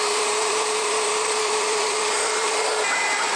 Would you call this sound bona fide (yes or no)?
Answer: no